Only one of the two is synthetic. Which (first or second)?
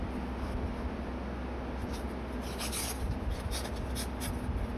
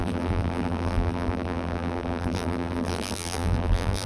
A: second